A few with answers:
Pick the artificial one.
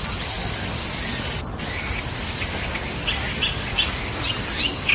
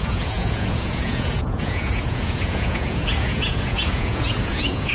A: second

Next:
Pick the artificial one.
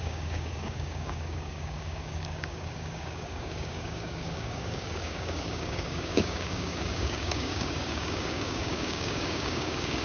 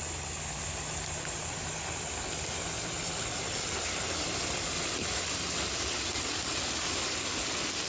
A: first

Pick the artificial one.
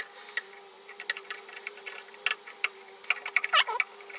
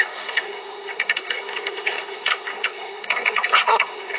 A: second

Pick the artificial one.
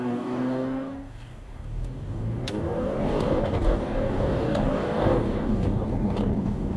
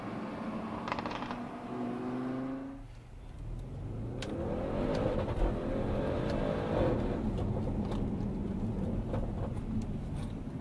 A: first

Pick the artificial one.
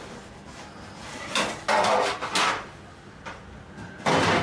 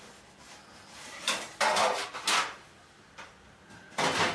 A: second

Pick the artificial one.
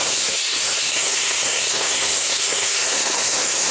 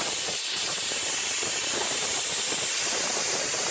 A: first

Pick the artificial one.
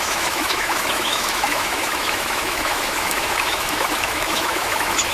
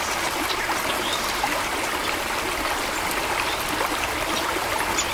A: first